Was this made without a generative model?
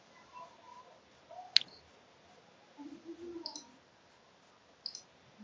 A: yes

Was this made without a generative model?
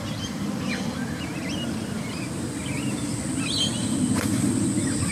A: no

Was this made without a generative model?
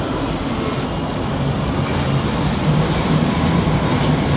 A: yes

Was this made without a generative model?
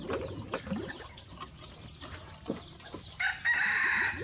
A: yes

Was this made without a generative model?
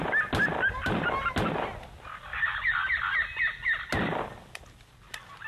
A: yes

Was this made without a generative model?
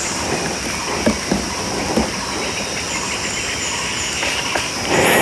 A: yes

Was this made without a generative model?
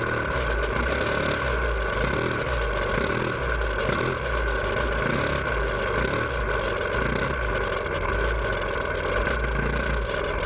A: yes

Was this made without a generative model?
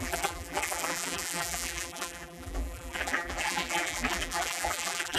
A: no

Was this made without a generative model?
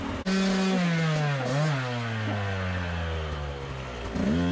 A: yes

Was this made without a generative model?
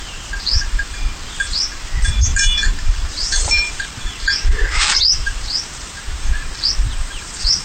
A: no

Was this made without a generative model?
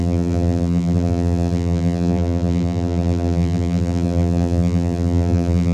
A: no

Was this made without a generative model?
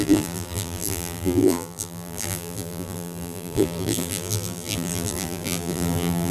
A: no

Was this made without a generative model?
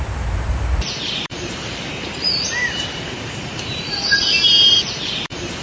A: no